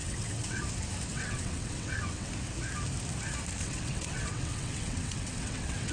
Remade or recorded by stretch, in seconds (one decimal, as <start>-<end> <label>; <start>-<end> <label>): 0.0-0.6 remade; 0.6-1.1 recorded; 1.1-2.3 remade; 2.3-3.6 recorded; 3.6-5.9 remade